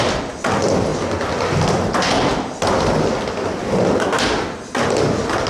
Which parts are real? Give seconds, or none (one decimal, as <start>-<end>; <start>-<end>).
0.0-5.5